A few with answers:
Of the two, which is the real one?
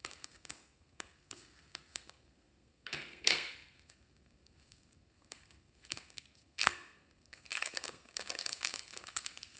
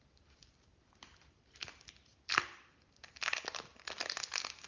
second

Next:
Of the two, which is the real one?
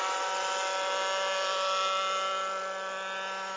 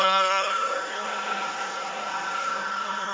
first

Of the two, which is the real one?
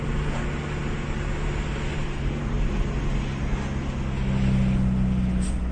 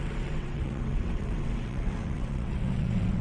first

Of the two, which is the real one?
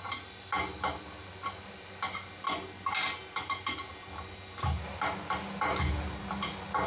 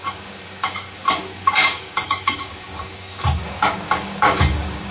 first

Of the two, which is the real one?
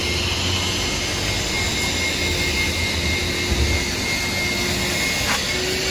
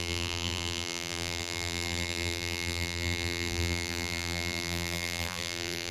first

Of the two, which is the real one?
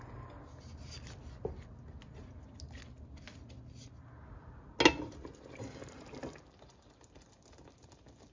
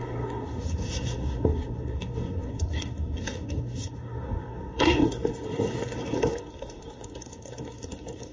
first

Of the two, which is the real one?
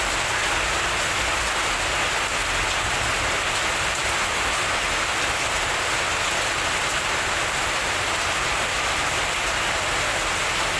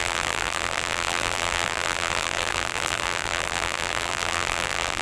first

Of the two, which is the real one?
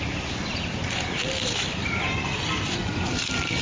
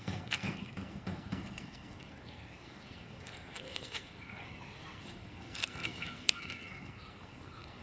first